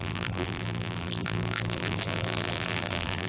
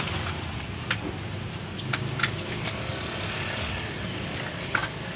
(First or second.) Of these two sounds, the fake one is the first